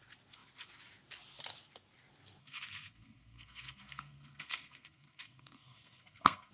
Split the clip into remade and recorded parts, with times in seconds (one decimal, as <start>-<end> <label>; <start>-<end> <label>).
0.0-2.4 recorded; 2.4-6.5 remade